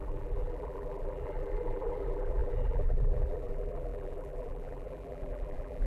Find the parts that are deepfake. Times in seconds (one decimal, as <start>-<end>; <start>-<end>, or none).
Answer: 0.0-5.9